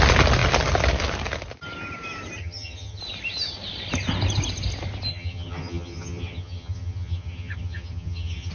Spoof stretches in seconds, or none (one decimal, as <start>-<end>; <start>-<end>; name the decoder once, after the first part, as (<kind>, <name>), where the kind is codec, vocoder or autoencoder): 2.4-3.0 (vocoder, HiFi-GAN); 5.1-8.5

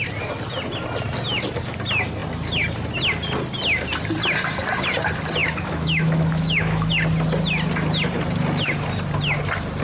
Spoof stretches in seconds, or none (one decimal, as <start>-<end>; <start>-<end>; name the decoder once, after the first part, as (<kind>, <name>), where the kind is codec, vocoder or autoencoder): 5.4-6.9 (autoencoder, DAC-VAE)

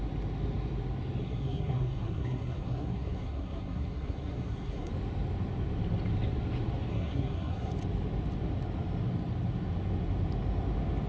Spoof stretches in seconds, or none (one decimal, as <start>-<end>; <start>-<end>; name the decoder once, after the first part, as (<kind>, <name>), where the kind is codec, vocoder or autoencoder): 1.2-4.9 (codec, SNAC); 6.9-7.7